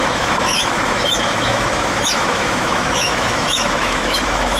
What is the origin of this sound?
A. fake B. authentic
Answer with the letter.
A